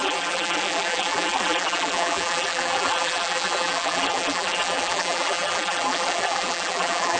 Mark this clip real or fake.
fake